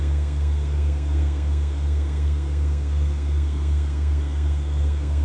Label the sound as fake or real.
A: fake